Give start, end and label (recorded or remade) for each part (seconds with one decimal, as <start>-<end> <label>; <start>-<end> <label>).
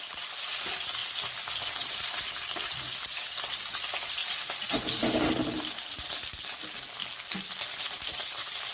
0.0-1.0 remade; 1.0-1.7 recorded; 1.7-7.0 remade; 7.0-7.6 recorded; 7.6-8.7 remade